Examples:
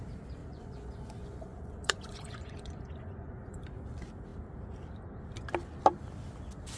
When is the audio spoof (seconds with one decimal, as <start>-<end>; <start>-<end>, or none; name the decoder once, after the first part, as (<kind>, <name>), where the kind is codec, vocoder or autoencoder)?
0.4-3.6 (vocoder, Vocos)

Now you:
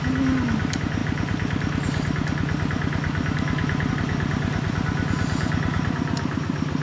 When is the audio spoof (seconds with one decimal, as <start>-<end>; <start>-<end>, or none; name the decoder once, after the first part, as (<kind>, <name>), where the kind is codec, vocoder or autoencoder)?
none

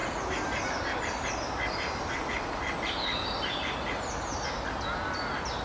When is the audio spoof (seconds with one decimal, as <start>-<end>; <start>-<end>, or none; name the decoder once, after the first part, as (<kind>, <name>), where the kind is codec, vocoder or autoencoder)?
none

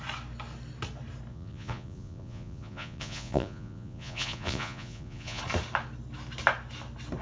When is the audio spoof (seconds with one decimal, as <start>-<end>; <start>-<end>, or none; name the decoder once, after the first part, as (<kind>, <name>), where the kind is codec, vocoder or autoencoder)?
1.3-5.4 (vocoder, Vocos)

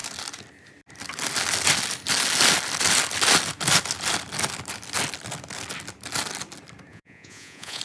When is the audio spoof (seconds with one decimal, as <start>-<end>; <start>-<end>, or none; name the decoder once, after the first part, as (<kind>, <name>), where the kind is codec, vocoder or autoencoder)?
6.9-7.8 (vocoder, Vocos)

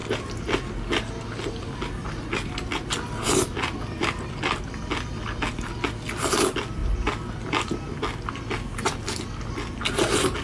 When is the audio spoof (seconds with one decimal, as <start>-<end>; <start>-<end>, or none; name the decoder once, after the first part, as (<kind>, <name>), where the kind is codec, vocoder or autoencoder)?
none

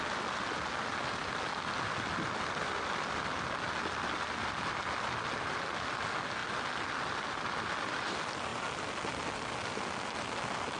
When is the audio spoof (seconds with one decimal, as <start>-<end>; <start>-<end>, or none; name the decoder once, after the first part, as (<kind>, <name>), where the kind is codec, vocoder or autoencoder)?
none